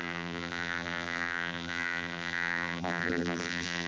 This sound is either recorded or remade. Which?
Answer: remade